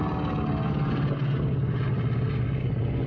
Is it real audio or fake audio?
real